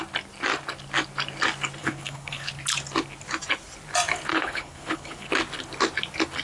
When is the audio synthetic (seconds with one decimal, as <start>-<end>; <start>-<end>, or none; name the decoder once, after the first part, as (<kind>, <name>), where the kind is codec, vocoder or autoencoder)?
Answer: 1.8-2.5 (codec, HILCodec); 4.3-5.3

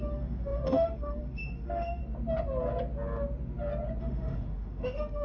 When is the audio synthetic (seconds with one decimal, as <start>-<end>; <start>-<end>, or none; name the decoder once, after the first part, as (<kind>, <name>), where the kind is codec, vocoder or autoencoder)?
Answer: 0.0-2.0 (autoencoder, DAC-VAE); 4.0-5.2

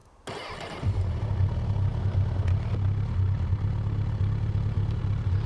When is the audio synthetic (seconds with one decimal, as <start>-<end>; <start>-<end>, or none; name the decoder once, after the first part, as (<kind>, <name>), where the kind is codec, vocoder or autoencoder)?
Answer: 0.7-1.9 (vocoder, BigVGAN v2); 5.0-5.5

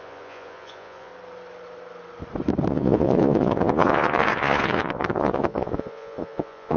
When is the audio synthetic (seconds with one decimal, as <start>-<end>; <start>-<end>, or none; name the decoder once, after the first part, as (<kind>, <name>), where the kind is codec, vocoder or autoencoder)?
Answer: 0.0-1.1 (vocoder, Vocos); 2.7-6.8

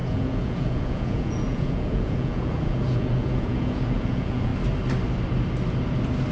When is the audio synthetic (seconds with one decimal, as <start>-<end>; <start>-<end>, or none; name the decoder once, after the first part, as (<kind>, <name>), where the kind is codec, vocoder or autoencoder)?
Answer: 0.0-4.5 (vocoder, Vocos)

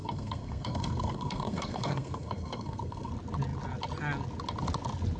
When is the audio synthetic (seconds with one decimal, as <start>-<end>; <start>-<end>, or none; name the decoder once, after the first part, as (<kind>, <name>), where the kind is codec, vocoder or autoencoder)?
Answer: 0.0-3.1 (codec, SNAC)

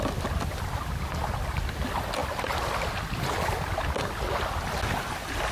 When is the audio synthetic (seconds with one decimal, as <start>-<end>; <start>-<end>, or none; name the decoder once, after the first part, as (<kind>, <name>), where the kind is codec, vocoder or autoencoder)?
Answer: none